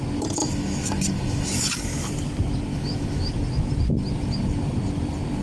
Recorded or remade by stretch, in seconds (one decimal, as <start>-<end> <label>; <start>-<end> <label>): 0.0-0.4 recorded; 0.4-2.1 remade; 2.1-2.7 recorded; 2.7-3.3 remade; 3.3-5.4 recorded